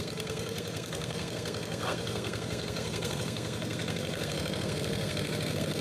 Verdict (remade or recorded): remade